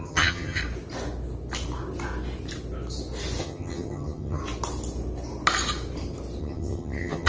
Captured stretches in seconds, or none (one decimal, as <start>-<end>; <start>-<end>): 0.6-3.4; 4.4-6.4